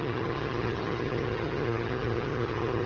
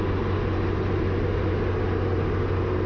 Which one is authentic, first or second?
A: second